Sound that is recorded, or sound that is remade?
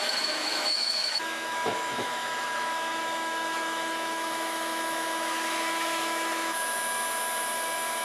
remade